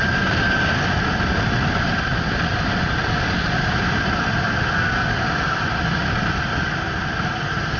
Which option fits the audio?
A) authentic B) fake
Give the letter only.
A